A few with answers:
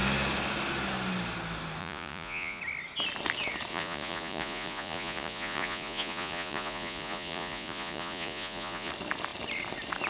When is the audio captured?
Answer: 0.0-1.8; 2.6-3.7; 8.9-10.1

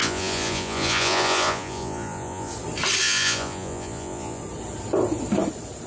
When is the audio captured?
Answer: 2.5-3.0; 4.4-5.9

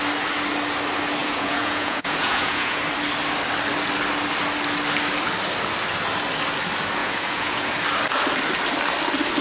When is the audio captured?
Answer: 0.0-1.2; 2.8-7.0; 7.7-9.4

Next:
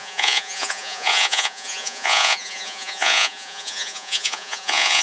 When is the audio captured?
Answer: none

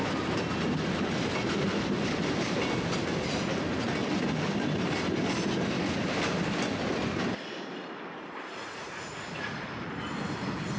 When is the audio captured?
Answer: 0.0-8.5; 9.9-10.8

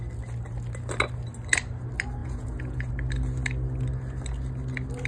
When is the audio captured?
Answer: 0.0-2.2; 2.9-5.1